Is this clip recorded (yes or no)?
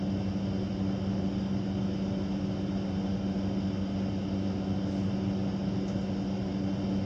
yes